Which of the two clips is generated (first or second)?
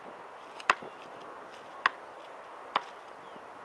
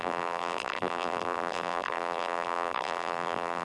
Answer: second